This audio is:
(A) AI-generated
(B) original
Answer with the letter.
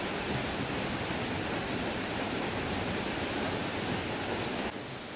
B